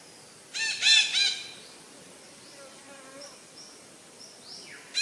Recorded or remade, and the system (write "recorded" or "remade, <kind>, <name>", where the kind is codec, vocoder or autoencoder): recorded